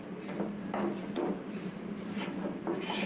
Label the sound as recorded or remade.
recorded